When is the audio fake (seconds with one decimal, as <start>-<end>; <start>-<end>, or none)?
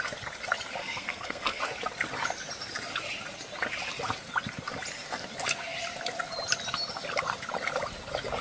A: 0.8-1.6